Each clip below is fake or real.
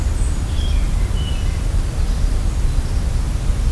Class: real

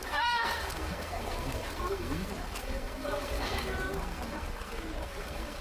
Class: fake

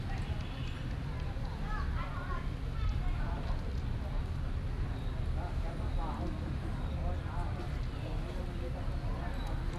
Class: real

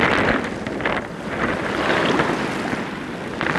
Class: real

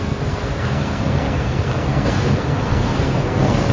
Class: fake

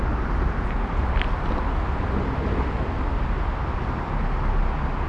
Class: real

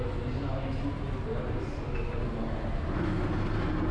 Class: real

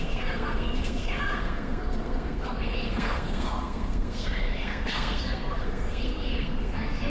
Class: fake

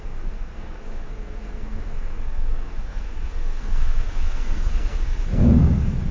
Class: fake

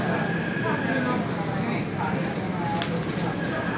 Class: real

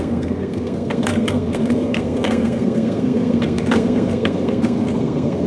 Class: fake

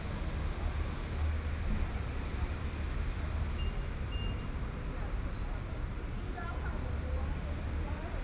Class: real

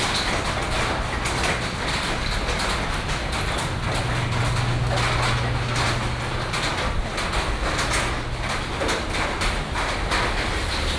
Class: real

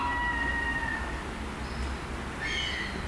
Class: real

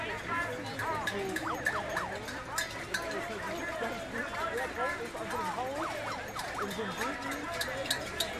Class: real